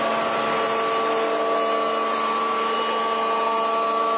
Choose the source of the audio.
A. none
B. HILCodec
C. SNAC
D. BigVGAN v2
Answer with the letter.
A